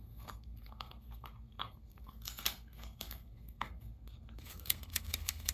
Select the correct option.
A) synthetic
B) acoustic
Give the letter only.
A